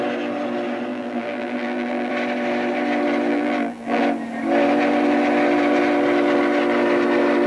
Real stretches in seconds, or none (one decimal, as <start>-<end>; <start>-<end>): 0.0-0.9; 2.1-3.3; 4.0-7.5